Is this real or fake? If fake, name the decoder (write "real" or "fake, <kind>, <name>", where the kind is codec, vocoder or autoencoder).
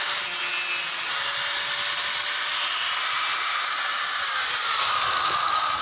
real